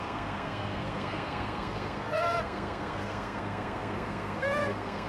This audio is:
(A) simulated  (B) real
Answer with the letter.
A